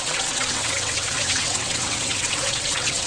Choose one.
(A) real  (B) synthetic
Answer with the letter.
B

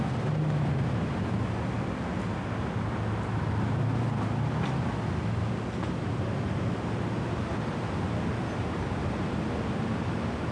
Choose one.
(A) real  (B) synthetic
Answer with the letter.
A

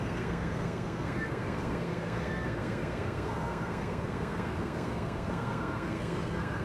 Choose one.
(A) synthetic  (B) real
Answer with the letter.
A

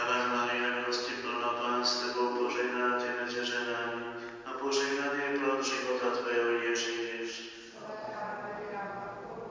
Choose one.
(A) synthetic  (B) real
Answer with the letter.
B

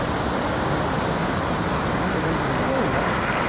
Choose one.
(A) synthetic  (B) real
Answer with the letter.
B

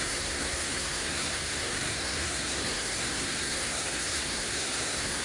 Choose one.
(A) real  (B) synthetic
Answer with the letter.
B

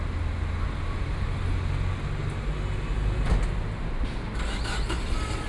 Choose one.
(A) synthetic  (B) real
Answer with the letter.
B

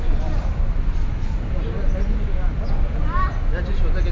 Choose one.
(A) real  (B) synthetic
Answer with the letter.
A